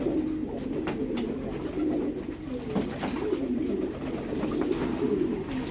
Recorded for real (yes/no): yes